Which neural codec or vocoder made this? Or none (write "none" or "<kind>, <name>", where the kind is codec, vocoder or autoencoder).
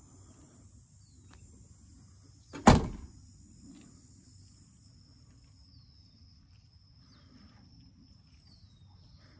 none